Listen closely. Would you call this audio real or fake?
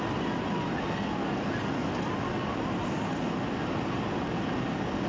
real